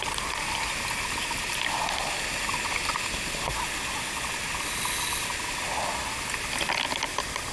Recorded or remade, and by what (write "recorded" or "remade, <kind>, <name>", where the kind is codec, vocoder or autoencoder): recorded